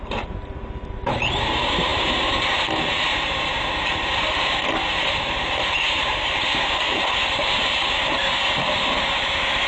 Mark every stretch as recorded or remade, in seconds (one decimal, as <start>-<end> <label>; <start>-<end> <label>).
0.0-9.7 remade